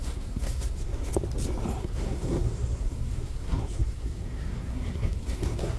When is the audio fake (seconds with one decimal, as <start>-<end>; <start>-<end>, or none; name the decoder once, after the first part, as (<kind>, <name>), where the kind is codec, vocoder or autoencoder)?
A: 0.0-1.1 (codec, SNAC); 1.8-5.8

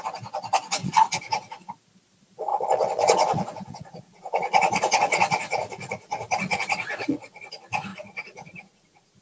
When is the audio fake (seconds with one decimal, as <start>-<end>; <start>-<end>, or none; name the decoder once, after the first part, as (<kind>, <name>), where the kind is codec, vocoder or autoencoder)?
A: 0.8-1.7 (vocoder, Vocos); 2.5-7.5; 7.9-9.2

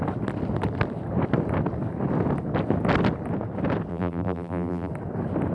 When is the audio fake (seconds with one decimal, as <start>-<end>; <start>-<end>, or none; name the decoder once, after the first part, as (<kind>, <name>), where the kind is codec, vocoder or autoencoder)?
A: 3.9-4.9 (vocoder, BigVGAN v2)